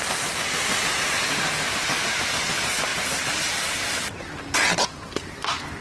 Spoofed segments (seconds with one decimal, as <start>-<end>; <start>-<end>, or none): 2.9-3.9